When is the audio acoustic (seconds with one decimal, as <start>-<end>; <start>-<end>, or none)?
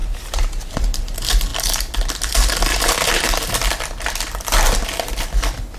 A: 1.0-5.8